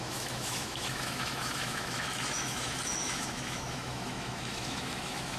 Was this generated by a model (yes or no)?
yes